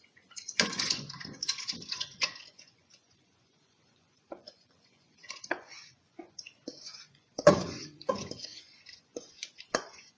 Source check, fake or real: fake